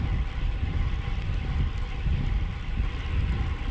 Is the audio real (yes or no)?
yes